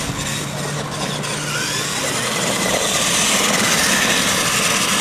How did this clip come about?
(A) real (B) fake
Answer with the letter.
A